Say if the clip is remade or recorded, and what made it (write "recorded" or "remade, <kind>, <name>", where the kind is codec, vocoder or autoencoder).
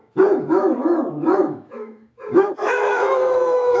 remade, autoencoder, DAC-VAE